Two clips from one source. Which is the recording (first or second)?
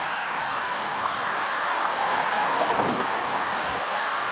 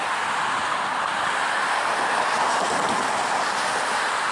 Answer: second